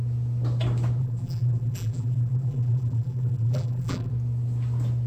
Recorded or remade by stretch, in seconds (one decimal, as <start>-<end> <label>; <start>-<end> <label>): 0.0-1.0 recorded; 1.0-4.1 remade; 4.1-5.1 recorded